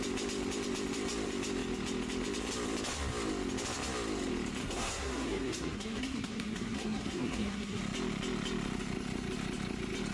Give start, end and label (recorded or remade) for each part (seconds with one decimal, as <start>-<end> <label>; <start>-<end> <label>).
0.0-4.6 recorded; 4.6-7.8 remade; 7.8-10.1 recorded